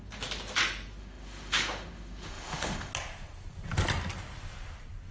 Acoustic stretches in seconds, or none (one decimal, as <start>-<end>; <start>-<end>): 0.0-1.0; 2.9-5.1